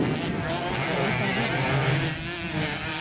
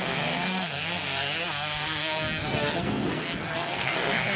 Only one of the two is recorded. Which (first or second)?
first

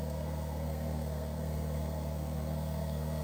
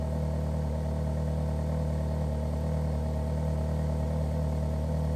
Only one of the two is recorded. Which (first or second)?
second